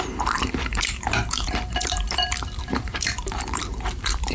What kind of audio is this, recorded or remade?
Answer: remade